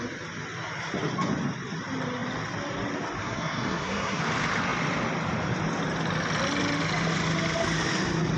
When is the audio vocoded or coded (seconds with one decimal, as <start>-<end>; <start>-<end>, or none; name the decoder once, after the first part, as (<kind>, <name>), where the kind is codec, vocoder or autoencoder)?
3.2-4.2 (codec, SNAC)